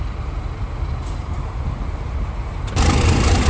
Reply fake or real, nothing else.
real